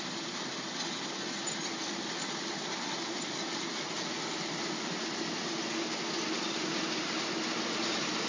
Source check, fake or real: real